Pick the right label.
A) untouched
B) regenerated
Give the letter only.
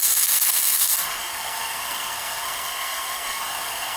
B